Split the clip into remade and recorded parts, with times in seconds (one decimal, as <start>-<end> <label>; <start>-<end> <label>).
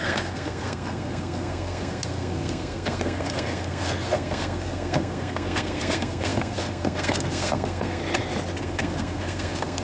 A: 0.0-8.0 remade; 8.0-8.6 recorded; 8.6-9.8 remade